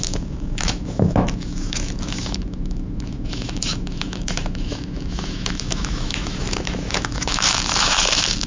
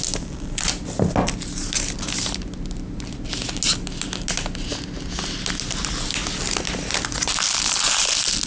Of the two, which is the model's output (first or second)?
first